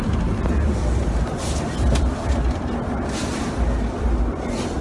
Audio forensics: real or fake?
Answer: real